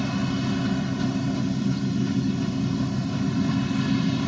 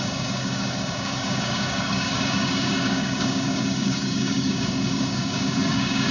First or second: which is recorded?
first